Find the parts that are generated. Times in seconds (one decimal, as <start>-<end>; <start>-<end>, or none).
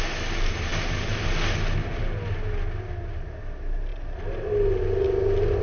none